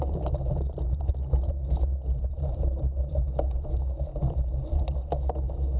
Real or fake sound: fake